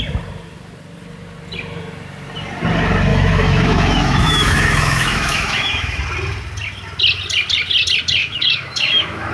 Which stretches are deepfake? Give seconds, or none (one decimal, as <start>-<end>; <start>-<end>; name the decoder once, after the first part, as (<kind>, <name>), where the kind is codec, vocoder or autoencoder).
3.1-6.0 (autoencoder, DAC-VAE); 8.2-9.3